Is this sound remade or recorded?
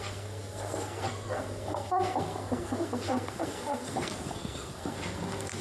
remade